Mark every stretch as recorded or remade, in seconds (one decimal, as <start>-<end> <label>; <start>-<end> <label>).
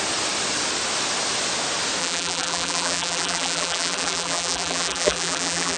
0.0-2.0 recorded; 2.0-5.8 remade